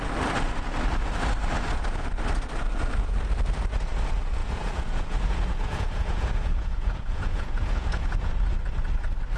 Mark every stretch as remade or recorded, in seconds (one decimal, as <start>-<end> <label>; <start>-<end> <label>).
0.0-4.4 recorded; 4.4-8.3 remade; 8.3-9.4 recorded